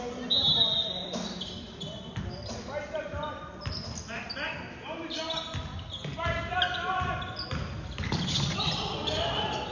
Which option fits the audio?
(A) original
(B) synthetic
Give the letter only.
A